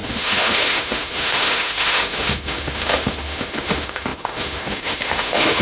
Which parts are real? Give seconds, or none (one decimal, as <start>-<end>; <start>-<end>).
none